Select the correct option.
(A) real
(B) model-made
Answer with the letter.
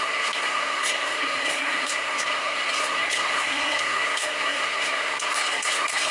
B